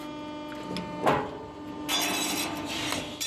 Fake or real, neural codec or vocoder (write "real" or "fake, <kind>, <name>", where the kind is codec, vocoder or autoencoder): real